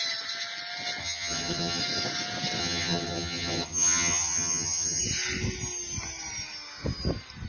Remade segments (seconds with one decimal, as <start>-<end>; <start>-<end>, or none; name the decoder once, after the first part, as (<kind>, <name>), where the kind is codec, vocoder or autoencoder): 1.0-1.8 (vocoder, HiFi-GAN); 2.6-5.0